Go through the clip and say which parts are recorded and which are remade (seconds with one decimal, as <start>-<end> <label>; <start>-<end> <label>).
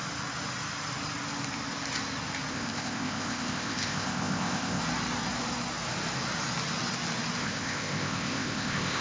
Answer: 0.0-2.5 recorded; 2.5-4.8 remade; 4.8-7.4 recorded; 7.4-9.0 remade